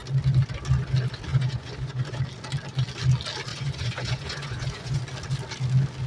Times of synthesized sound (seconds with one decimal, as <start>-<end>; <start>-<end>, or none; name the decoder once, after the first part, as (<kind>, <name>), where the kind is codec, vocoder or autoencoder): 1.3-2.2 (vocoder, Vocos); 3.5-5.0